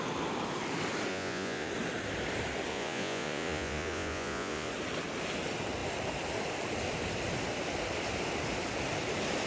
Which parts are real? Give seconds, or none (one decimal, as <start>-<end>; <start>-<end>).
0.0-1.1; 1.7-2.7; 4.7-9.5